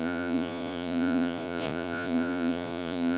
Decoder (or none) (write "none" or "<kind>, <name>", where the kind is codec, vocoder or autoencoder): vocoder, Vocos